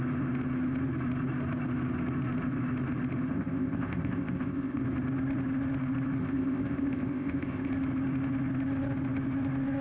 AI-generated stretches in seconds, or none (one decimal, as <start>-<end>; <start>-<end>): 3.3-4.8; 6.2-7.7